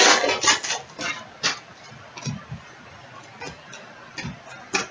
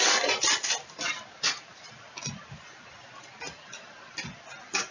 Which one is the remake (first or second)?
second